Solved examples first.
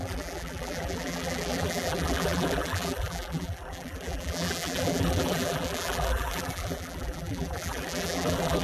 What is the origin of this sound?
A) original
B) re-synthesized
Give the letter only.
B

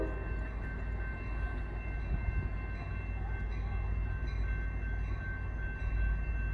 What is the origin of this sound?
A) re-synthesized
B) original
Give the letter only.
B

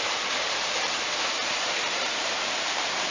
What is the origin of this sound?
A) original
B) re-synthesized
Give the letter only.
B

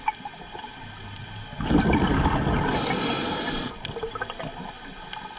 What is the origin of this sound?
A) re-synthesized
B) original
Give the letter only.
B